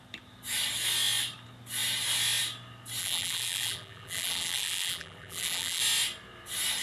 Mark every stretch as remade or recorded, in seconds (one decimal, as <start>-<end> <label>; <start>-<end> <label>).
0.0-3.0 recorded; 3.0-5.8 remade; 5.8-6.8 recorded